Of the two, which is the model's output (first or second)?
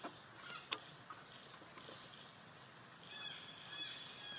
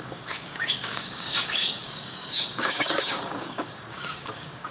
second